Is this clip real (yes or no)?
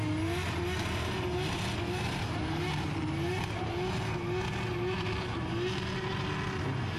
yes